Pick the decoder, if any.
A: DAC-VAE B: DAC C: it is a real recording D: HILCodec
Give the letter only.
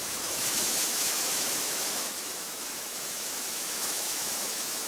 A